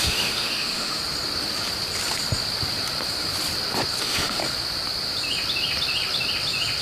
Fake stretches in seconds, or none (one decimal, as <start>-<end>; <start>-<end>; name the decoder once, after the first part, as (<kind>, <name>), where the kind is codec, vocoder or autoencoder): 0.0-1.0 (autoencoder, DAC-VAE); 4.0-4.4